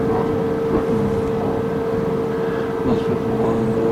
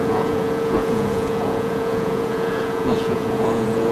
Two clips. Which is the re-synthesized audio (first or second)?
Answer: second